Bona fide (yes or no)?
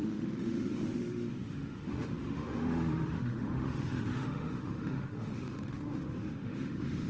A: no